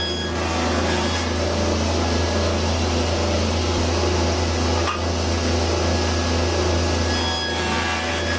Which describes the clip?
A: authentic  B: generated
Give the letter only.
A